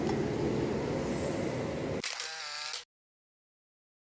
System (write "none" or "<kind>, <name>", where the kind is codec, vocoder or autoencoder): none